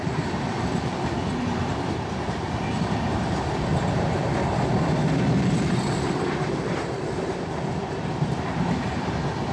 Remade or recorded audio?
remade